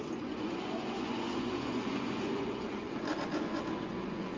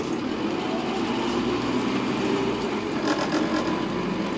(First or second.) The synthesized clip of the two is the first